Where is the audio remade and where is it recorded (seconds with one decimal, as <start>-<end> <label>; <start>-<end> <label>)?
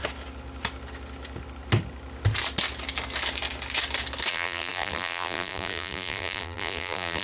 0.0-4.3 recorded; 4.3-7.2 remade